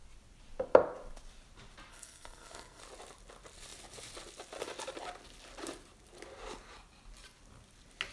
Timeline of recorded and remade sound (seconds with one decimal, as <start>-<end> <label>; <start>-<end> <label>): 0.0-1.9 recorded; 1.9-2.8 remade; 2.8-8.1 recorded